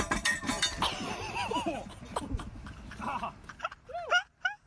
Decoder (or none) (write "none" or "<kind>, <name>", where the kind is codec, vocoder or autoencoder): none